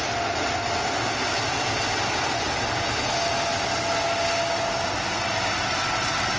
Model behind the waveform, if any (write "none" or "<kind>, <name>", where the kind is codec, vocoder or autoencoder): none